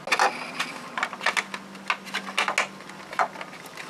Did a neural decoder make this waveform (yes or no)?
no